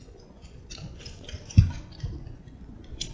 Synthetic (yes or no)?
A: yes